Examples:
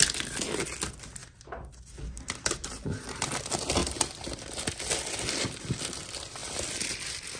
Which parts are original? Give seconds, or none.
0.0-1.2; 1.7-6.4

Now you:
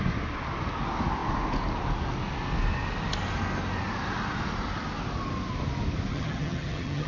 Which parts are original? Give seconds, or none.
0.0-6.1

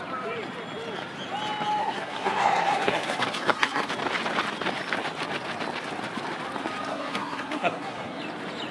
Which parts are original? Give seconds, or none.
0.0-1.8; 3.9-6.9; 8.2-8.7

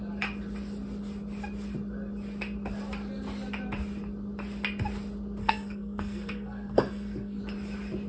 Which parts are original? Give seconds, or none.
0.0-5.4; 7.4-8.1

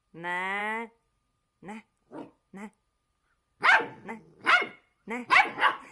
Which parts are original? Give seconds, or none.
0.0-5.2

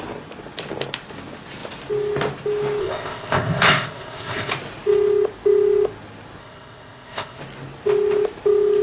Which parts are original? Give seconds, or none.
0.0-2.8; 4.5-6.4; 7.4-8.8

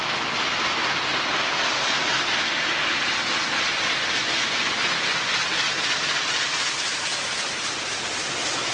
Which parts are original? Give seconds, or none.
0.0-4.2; 5.3-8.7